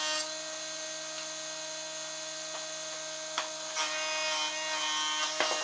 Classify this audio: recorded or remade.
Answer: recorded